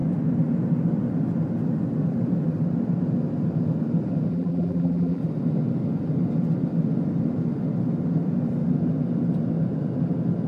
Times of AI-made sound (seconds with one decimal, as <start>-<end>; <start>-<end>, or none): 4.3-5.2